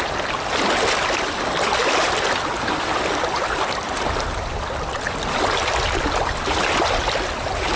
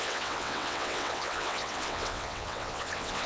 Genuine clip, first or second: first